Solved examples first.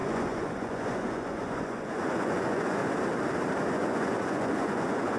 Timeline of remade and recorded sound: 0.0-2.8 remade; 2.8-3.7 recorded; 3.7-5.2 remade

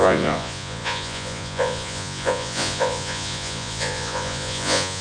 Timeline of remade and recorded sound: 0.0-5.0 remade

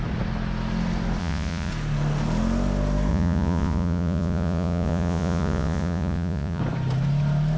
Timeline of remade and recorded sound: 0.0-1.2 recorded; 1.2-1.7 remade; 1.7-3.1 recorded; 3.1-6.6 remade; 6.6-7.6 recorded

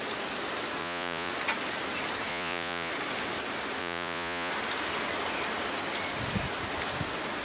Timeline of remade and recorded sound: 0.0-0.8 recorded; 0.8-1.3 remade; 1.3-2.3 recorded; 2.3-2.9 remade; 2.9-3.8 recorded; 3.8-4.5 remade; 4.5-7.4 recorded

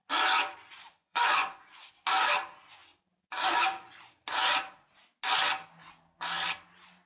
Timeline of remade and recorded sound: 0.0-1.0 recorded; 1.0-1.8 remade; 1.8-7.1 recorded